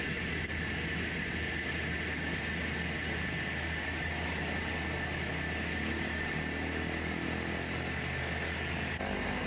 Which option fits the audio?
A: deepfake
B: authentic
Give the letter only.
B